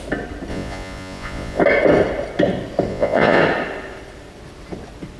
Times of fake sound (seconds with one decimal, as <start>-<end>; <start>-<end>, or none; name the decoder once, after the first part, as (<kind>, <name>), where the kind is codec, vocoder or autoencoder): 0.5-1.6 (vocoder, Vocos); 2.9-3.4